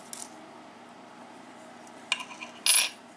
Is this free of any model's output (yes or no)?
yes